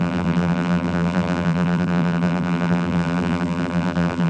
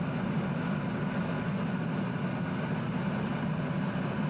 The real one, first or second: second